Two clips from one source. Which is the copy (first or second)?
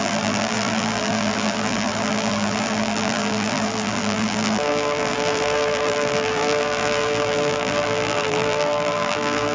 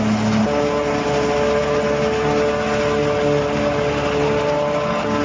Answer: first